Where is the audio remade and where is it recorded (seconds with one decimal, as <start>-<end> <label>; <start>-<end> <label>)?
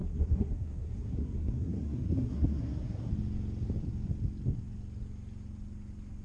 0.0-3.1 remade; 3.1-6.2 recorded